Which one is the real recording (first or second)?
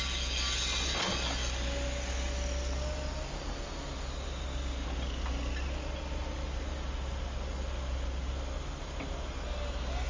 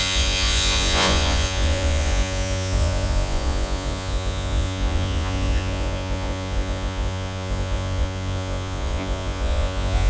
first